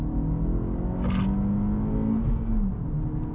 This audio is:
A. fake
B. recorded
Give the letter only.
B